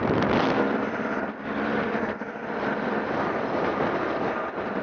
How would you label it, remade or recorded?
remade